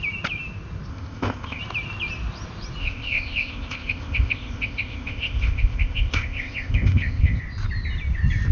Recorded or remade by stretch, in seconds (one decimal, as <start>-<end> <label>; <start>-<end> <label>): 0.0-0.9 recorded; 0.9-1.6 remade; 1.6-2.8 recorded; 2.8-7.4 remade; 7.4-8.5 recorded

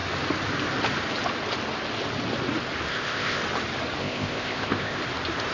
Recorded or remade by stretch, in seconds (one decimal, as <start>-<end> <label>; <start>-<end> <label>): 0.0-2.9 recorded; 2.9-3.4 remade; 3.4-4.0 recorded; 4.0-5.0 remade; 5.0-5.5 recorded

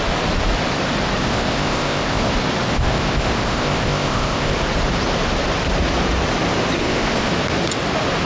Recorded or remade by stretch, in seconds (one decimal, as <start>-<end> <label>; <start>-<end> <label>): 0.0-1.2 recorded; 1.2-2.3 remade; 2.3-2.7 recorded; 2.7-4.6 remade; 4.6-6.8 recorded; 6.8-7.3 remade; 7.3-8.3 recorded

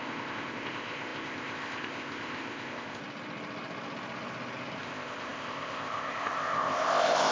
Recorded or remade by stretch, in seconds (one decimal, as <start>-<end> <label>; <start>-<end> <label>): 0.0-3.0 remade; 3.0-4.8 recorded; 4.8-7.3 remade

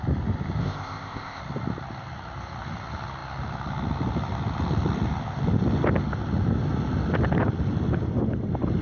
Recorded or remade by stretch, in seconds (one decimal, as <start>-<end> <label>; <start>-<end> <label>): 0.0-0.6 recorded; 0.6-1.4 remade; 1.4-8.8 recorded

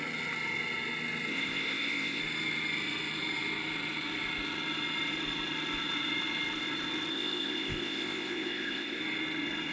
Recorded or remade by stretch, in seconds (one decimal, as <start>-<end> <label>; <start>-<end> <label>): 0.0-1.3 recorded; 1.3-2.2 remade; 2.2-7.1 recorded; 7.1-9.0 remade; 9.0-9.7 recorded

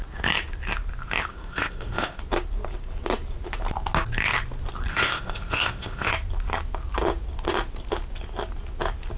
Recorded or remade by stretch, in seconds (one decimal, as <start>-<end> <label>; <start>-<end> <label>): 0.0-1.3 recorded; 1.3-2.2 remade; 2.2-4.9 recorded; 4.9-6.1 remade; 6.1-9.2 recorded

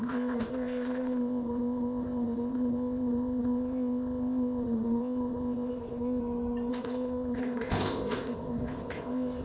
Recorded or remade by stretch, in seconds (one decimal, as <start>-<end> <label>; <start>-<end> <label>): 0.0-6.2 remade; 6.2-6.7 recorded; 6.7-9.4 remade